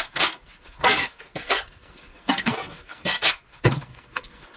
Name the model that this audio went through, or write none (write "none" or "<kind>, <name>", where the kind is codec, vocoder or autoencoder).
codec, SNAC